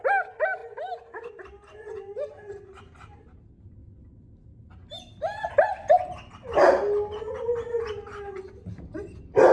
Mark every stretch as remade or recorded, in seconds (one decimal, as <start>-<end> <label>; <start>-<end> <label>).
0.0-9.5 recorded